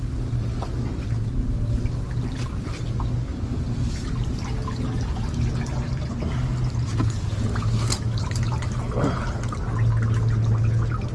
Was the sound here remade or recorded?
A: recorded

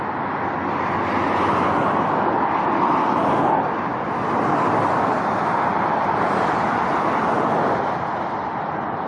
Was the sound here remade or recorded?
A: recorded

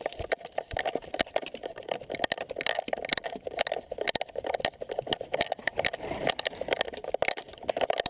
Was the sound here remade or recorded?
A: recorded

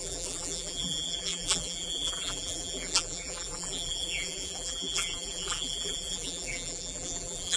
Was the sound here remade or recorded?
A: remade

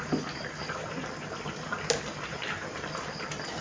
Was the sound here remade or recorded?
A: recorded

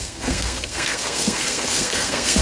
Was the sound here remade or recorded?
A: remade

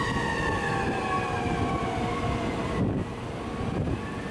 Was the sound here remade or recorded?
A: recorded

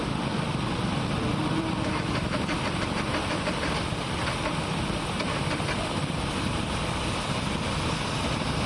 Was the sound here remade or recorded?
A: remade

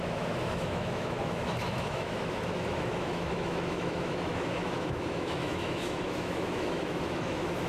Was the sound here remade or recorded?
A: remade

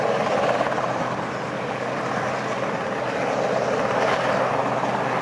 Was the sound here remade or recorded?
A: recorded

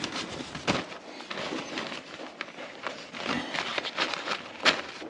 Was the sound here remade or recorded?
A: recorded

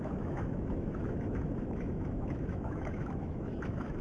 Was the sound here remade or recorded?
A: remade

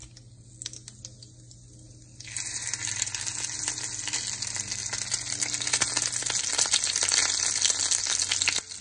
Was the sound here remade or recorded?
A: recorded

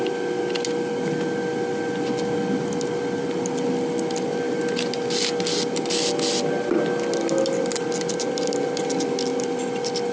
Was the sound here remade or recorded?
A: recorded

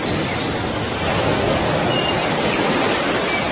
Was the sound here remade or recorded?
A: recorded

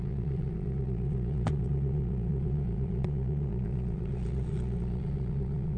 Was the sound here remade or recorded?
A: remade